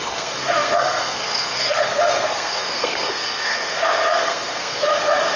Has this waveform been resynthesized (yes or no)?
yes